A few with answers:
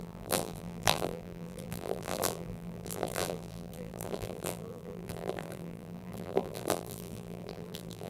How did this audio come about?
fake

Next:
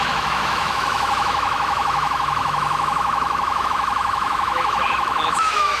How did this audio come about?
fake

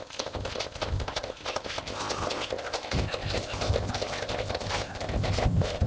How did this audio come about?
fake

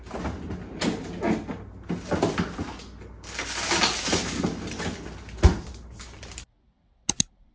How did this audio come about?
real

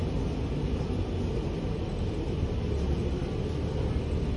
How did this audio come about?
real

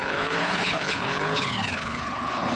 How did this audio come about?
fake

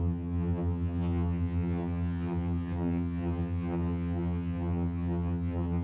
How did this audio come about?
fake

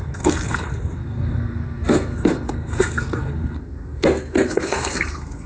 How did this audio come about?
fake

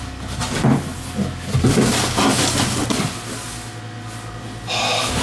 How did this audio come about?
real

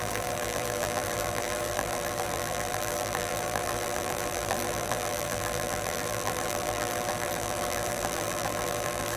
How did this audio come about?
fake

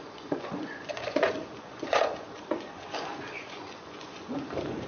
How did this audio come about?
fake